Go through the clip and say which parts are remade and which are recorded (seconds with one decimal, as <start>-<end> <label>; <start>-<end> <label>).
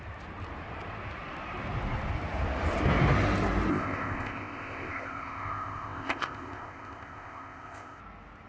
0.0-3.7 recorded; 3.7-8.0 remade; 8.0-8.5 recorded